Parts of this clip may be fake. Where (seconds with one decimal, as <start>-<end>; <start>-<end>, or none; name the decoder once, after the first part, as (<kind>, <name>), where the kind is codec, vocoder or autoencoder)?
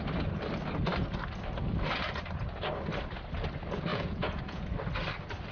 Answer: 3.9-4.6 (vocoder, Vocos)